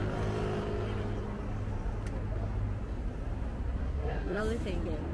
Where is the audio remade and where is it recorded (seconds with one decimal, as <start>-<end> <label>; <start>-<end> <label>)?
0.0-3.8 recorded; 3.8-4.4 remade; 4.4-5.1 recorded